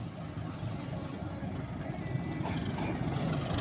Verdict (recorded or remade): recorded